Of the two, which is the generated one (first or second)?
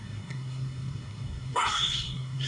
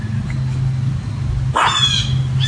first